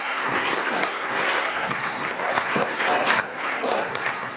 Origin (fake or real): fake